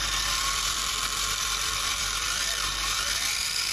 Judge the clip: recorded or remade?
remade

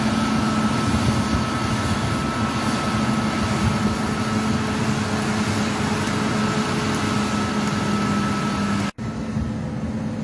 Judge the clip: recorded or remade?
recorded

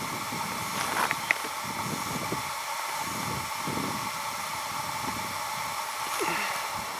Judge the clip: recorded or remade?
recorded